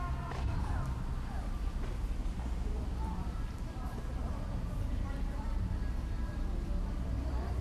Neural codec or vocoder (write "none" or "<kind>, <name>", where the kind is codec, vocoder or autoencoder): vocoder, BigVGAN v2